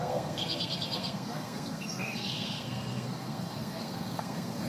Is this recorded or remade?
remade